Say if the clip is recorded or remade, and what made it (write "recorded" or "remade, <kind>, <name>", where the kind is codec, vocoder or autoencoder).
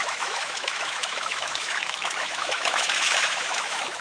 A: remade, autoencoder, DAC-VAE